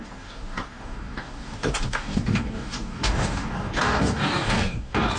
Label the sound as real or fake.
fake